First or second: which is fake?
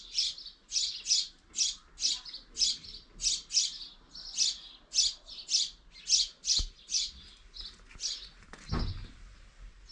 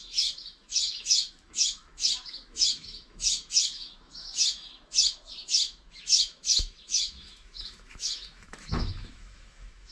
second